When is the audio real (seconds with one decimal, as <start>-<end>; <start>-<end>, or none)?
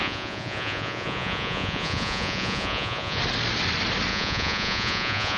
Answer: 3.2-4.1